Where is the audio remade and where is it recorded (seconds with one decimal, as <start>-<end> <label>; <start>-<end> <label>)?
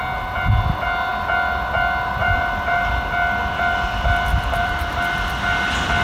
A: 0.0-2.2 recorded; 2.2-2.9 remade; 2.9-4.3 recorded; 4.3-4.9 remade; 4.9-6.0 recorded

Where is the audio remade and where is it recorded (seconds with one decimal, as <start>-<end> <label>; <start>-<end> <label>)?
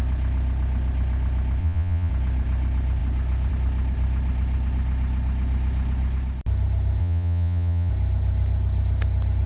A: 0.0-1.6 recorded; 1.6-2.1 remade; 2.1-7.0 recorded; 7.0-7.9 remade; 7.9-9.5 recorded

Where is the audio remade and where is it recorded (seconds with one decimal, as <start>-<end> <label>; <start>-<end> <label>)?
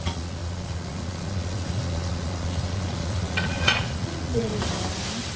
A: 0.0-4.5 remade; 4.5-5.4 recorded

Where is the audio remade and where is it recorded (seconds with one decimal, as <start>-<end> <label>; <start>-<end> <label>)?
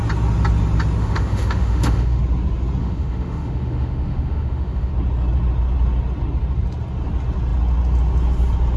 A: 0.0-1.0 recorded; 1.0-2.2 remade; 2.2-2.8 recorded; 2.8-4.9 remade; 4.9-8.8 recorded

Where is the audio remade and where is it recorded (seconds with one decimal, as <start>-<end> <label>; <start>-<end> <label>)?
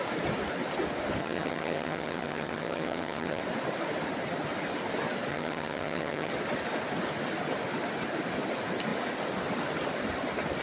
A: 0.0-1.2 recorded; 1.2-3.4 remade; 3.4-5.3 recorded; 5.3-6.3 remade; 6.3-10.6 recorded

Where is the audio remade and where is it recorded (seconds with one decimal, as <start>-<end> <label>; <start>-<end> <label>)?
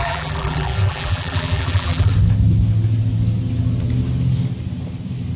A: 0.0-2.1 remade; 2.1-5.4 recorded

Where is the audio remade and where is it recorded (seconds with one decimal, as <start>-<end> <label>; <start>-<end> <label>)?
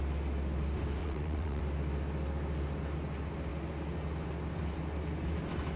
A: 0.0-1.0 recorded; 1.0-1.6 remade; 1.6-5.8 recorded